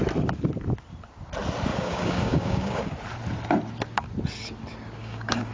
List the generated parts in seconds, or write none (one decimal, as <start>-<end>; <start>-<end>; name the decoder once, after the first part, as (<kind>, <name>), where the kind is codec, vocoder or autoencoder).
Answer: 1.7-2.9 (codec, DAC); 5.0-5.5